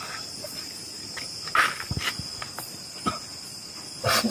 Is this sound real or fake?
real